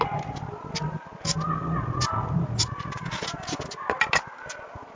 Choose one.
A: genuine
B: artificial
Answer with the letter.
A